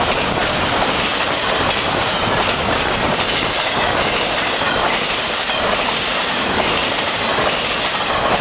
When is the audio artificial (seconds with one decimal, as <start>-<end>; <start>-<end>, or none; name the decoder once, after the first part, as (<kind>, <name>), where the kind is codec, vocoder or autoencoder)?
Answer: none